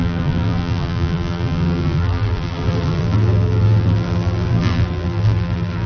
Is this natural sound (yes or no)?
no